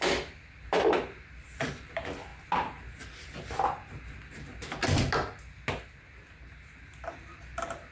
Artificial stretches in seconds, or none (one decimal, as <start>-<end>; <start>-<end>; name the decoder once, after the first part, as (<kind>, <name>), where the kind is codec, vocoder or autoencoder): 0.0-2.3 (vocoder, BigVGAN v2); 7.0-7.9